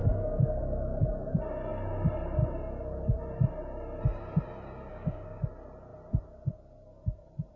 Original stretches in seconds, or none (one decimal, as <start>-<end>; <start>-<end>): 0.6-4.9; 5.4-7.6